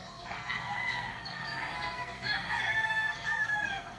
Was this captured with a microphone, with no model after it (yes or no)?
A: no